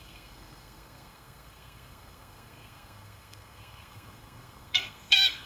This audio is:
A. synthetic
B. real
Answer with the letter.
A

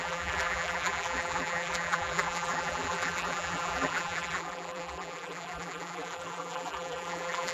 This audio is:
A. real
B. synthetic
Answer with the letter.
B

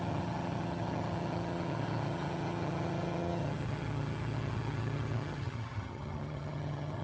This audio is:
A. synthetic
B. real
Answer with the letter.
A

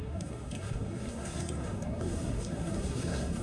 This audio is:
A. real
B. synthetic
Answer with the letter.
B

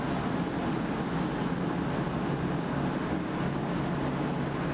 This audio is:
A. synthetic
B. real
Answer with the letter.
B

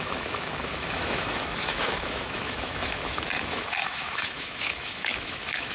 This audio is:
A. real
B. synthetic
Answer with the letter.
B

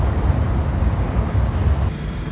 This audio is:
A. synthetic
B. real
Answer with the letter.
B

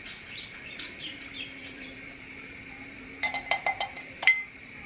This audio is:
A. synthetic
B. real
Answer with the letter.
A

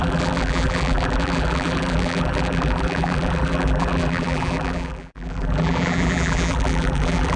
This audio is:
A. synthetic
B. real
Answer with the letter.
A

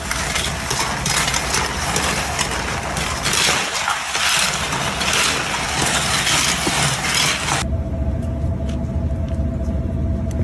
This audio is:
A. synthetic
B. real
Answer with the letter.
B